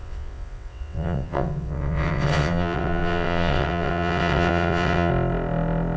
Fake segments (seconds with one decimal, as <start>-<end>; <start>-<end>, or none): 0.0-5.1